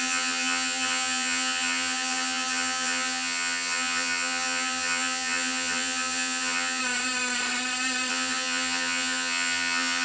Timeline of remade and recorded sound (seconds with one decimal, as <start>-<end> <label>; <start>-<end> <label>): 0.0-6.8 remade; 6.8-8.1 recorded; 8.1-10.0 remade